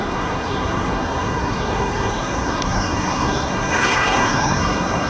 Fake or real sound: fake